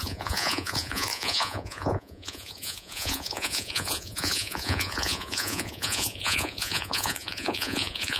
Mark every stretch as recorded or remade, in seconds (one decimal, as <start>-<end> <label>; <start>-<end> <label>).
0.0-8.2 remade